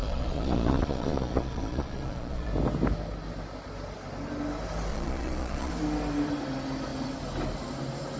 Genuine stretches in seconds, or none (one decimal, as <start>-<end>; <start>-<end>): 2.5-4.9; 5.7-8.2

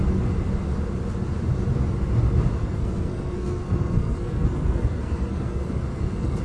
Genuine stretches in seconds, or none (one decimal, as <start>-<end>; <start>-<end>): 0.0-2.6